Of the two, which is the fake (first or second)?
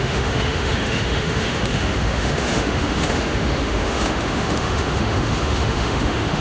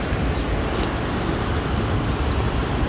first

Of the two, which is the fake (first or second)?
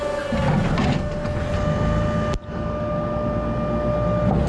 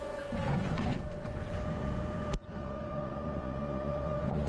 second